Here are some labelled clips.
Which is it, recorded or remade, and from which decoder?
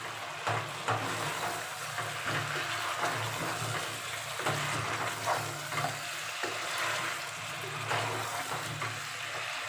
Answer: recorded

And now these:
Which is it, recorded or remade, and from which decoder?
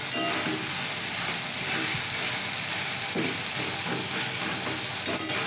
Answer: recorded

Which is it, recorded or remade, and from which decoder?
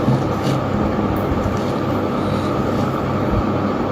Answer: recorded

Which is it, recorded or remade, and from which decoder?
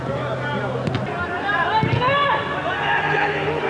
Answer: recorded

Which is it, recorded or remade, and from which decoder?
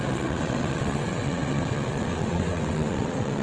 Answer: remade, vocoder, WaveNeXt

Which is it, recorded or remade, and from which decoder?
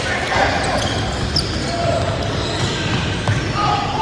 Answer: recorded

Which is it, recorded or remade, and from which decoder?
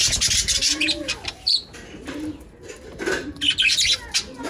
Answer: recorded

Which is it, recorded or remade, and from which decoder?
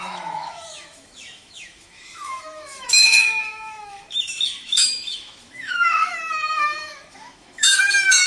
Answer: remade, autoencoder, DAC-VAE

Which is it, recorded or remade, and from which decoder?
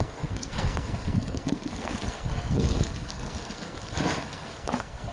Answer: remade, codec, SNAC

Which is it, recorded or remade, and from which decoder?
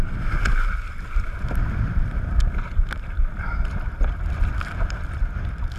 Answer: recorded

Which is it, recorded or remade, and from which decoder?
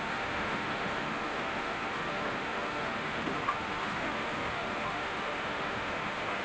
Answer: remade, autoencoder, DAC-VAE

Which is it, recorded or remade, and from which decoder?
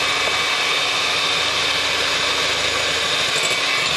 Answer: recorded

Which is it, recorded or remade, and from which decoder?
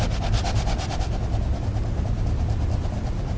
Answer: recorded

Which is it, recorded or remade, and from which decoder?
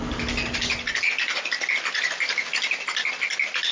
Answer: recorded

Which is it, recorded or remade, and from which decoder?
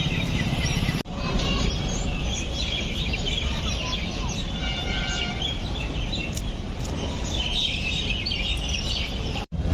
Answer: remade, vocoder, BigVGAN v2